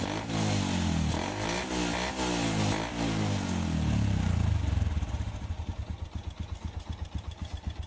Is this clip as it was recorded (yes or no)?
yes